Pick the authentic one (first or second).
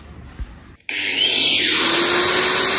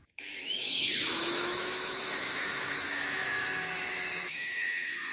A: first